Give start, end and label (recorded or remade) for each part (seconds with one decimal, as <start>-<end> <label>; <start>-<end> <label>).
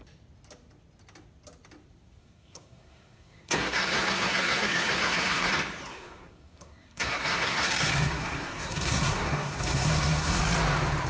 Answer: 0.0-2.2 recorded; 2.2-5.5 remade; 5.5-5.9 recorded; 5.9-10.4 remade; 10.4-11.1 recorded